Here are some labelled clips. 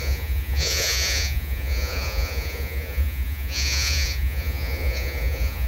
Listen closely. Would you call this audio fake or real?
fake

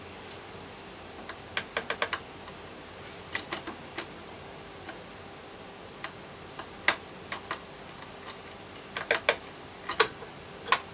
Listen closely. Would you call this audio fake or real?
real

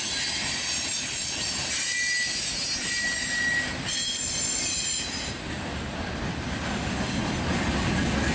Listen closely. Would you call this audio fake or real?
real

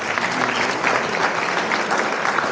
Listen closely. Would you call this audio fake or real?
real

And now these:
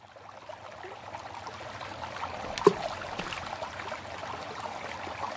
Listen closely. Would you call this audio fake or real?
real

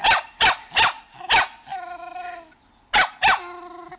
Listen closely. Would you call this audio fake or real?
real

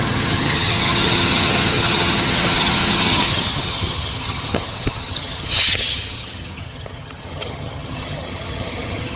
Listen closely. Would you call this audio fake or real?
fake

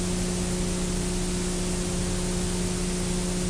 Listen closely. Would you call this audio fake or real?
real